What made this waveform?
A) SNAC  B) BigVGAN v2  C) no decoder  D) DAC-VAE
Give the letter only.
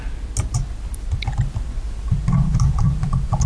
C